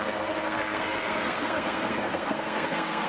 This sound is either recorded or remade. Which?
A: remade